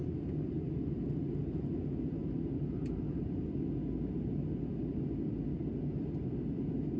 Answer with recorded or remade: recorded